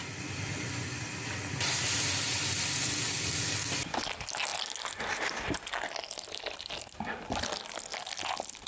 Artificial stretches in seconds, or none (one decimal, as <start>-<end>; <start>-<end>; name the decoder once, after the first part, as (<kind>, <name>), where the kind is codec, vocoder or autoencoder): none